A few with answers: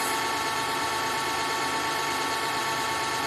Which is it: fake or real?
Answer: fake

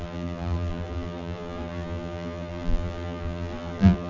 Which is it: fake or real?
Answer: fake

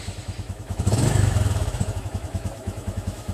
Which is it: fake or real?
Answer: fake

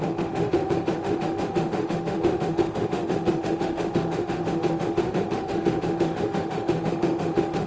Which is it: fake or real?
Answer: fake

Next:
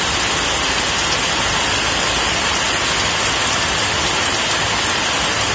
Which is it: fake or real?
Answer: real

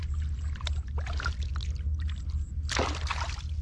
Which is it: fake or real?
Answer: real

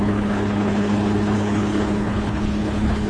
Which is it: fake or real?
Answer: fake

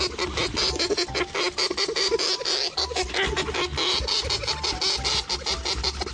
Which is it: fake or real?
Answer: real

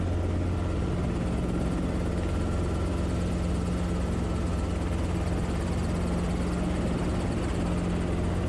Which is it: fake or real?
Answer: real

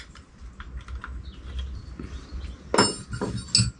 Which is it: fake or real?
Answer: real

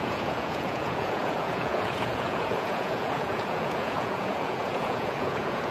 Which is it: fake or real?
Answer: fake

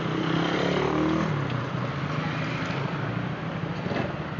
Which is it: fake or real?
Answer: real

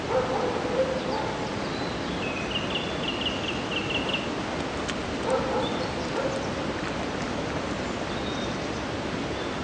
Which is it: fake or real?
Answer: real